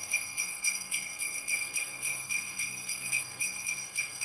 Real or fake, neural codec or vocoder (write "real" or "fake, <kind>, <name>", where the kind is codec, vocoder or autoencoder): fake, codec, SNAC